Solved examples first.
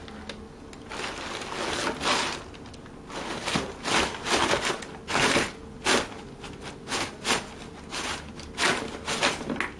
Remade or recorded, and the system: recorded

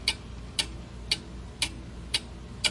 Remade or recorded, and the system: recorded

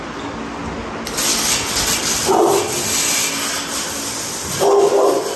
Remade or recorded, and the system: recorded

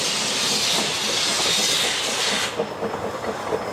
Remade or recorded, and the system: recorded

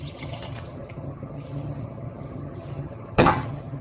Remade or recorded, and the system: remade, vocoder, HiFi-GAN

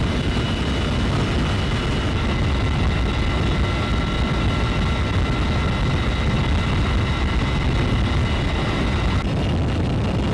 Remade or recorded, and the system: recorded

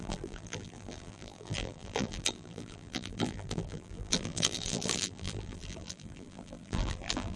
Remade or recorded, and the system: remade, vocoder, BigVGAN v2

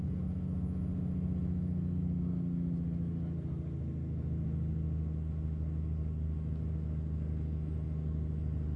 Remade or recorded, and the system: recorded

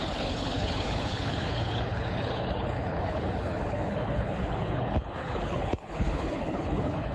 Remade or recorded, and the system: remade, codec, HILCodec